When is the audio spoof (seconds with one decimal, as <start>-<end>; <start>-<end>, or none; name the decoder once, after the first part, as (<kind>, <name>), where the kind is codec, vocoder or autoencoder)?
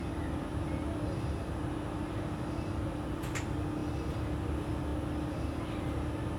none